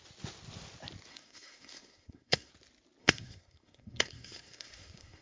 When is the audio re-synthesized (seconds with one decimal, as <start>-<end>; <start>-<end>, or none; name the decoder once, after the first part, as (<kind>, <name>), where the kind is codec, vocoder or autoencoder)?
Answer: 1.1-2.5 (codec, SNAC); 3.0-5.2